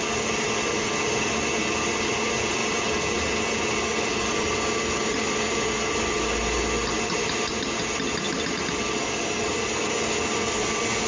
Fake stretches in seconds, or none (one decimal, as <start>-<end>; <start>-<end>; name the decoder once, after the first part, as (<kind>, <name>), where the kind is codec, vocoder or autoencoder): none